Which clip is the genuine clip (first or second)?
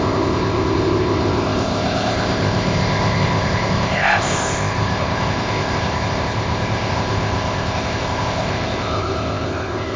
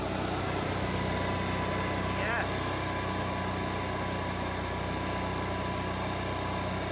second